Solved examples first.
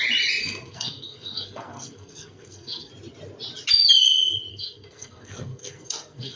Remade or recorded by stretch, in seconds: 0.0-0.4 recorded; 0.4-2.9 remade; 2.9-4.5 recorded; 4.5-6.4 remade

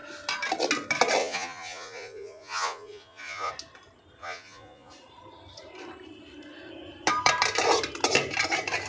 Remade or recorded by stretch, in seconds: 0.0-1.2 recorded; 1.2-3.5 remade; 3.5-4.2 recorded; 4.2-4.9 remade; 4.9-8.9 recorded

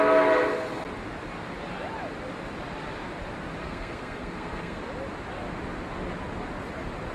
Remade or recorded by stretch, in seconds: 0.0-3.6 recorded; 3.6-4.8 remade; 4.8-7.1 recorded

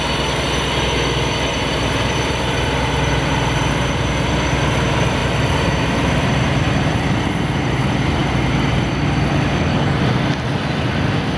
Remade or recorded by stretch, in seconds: 0.0-1.5 recorded; 1.5-4.3 remade; 4.3-5.2 recorded; 5.2-7.8 remade; 7.8-11.4 recorded